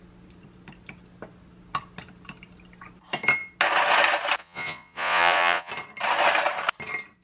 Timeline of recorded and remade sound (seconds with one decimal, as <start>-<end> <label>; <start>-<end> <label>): 0.0-4.4 recorded; 4.4-5.7 remade; 5.7-7.2 recorded